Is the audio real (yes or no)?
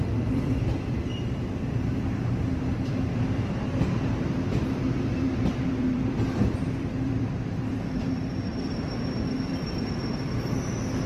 no